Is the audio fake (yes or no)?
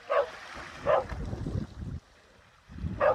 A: no